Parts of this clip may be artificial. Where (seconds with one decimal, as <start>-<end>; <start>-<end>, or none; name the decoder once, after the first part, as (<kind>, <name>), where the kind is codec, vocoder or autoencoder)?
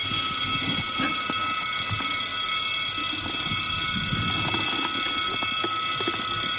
none